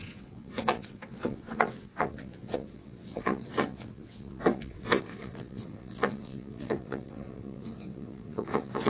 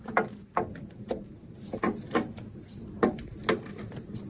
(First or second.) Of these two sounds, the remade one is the first